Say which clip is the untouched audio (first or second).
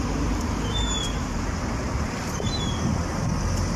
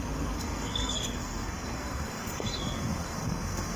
first